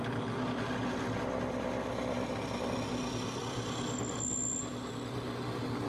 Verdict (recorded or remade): recorded